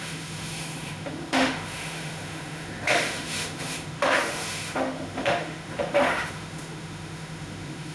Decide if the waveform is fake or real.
fake